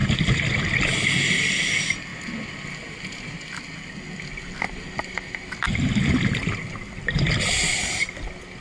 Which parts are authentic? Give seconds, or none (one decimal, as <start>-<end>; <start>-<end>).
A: 0.0-8.6